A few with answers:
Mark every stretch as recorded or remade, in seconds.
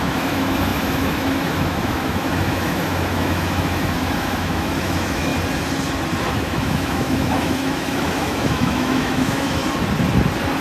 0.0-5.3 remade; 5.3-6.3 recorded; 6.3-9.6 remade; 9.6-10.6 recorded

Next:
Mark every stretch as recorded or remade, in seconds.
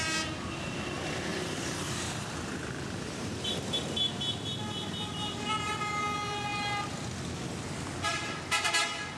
0.0-1.3 recorded; 1.3-4.0 remade; 4.0-8.1 recorded; 8.1-8.7 remade; 8.7-9.2 recorded